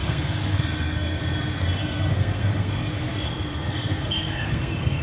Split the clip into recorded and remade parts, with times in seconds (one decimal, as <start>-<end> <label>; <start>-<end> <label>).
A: 0.0-1.2 remade; 1.2-1.8 recorded; 1.8-5.0 remade